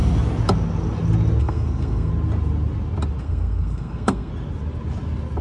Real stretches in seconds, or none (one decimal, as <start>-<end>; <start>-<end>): 0.0-1.4; 2.1-3.2; 4.3-5.4